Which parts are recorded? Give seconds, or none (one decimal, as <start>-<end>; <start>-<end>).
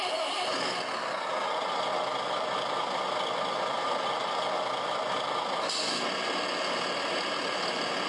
0.0-8.1